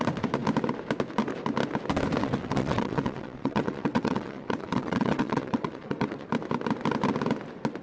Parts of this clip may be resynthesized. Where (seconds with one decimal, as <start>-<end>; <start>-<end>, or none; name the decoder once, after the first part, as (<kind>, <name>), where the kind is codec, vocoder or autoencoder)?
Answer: 2.2-6.3 (vocoder, WaveNeXt)